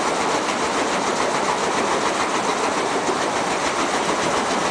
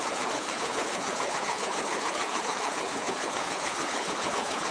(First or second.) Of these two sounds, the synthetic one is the second